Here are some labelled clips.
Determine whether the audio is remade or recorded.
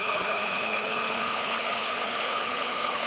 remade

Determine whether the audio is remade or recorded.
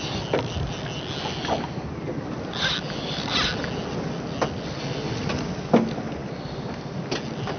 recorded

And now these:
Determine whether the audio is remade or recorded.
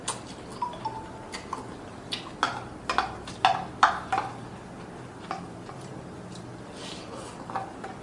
recorded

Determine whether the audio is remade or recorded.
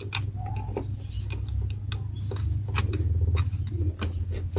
recorded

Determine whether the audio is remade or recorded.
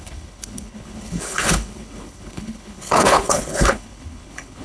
remade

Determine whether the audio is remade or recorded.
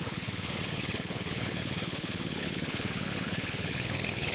remade